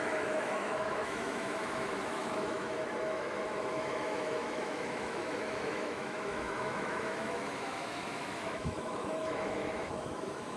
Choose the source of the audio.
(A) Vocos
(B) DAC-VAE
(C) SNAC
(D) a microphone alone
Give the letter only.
B